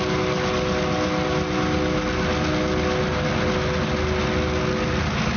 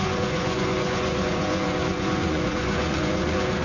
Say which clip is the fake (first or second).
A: second